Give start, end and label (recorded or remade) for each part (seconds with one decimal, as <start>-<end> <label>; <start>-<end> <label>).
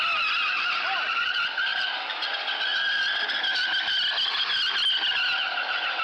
0.0-1.7 recorded; 1.7-2.3 remade; 2.3-6.0 recorded